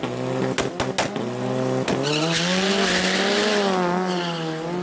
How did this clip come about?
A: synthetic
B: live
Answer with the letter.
B